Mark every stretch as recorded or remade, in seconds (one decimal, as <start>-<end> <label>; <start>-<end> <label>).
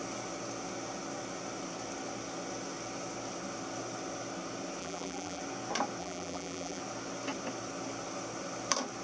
0.0-4.8 recorded; 4.8-5.4 remade; 5.4-6.0 recorded; 6.0-6.8 remade; 6.8-9.0 recorded